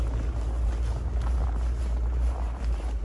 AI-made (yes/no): no